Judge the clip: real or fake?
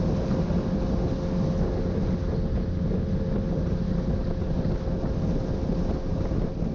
real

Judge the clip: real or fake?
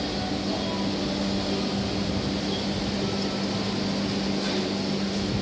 real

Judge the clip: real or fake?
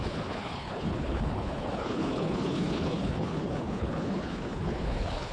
fake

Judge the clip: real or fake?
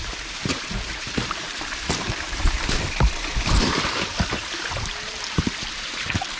fake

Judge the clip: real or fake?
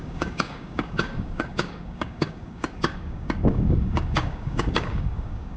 fake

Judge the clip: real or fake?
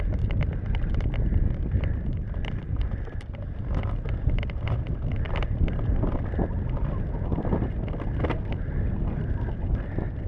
real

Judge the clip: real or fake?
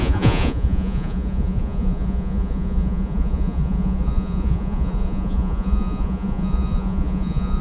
fake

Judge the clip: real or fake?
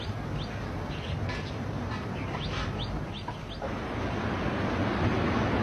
real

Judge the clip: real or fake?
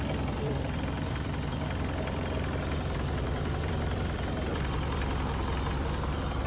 fake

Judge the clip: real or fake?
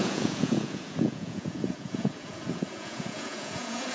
fake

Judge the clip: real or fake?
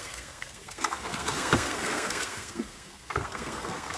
fake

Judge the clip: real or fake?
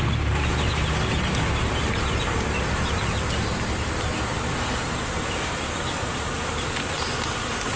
real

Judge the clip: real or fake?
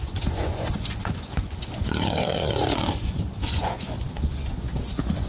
fake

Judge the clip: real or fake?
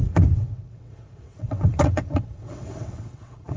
fake